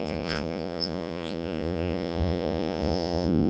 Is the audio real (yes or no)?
no